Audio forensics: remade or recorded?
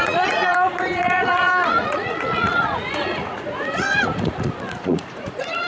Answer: remade